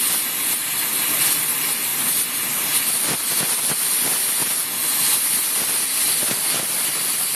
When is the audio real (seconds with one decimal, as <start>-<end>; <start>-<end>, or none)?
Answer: 0.0-7.3